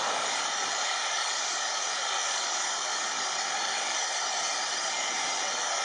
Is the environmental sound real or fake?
fake